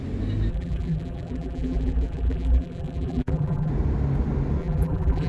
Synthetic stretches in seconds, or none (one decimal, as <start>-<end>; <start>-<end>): 0.5-3.7; 4.6-5.3